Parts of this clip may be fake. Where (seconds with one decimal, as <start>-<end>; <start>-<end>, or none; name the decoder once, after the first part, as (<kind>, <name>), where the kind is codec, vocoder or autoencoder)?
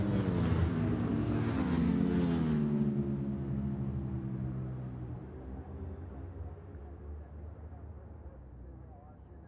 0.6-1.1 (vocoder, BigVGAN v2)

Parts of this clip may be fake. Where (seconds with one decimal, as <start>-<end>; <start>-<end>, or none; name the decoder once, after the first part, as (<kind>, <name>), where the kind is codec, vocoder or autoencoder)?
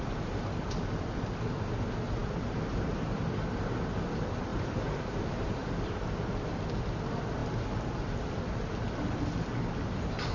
4.5-5.7 (vocoder, BigVGAN v2)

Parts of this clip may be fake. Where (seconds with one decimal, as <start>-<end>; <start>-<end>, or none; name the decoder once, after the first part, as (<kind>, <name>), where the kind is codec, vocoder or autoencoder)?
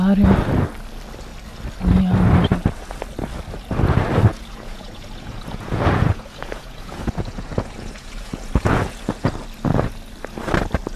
4.3-9.3 (vocoder, Vocos)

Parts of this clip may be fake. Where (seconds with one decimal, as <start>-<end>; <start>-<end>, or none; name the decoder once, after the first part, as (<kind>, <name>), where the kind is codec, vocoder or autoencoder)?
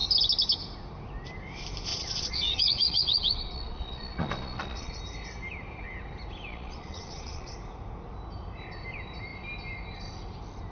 1.9-5.0 (vocoder, Vocos); 6.5-7.5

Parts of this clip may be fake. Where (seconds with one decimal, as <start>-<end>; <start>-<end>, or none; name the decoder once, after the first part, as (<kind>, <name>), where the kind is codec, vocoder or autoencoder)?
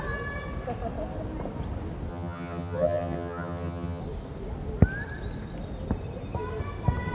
2.1-4.0 (vocoder, HiFi-GAN)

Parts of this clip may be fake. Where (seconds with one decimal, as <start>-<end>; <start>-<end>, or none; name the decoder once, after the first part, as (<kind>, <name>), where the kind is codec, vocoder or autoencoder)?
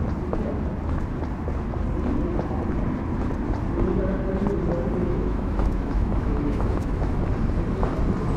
5.0-7.2 (autoencoder, DAC-VAE)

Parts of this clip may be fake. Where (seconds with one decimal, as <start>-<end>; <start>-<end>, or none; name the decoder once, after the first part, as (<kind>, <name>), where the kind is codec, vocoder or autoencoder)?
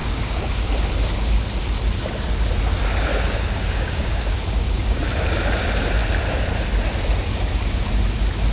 0.0-0.7 (codec, DAC); 3.1-5.0